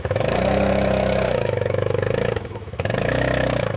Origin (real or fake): fake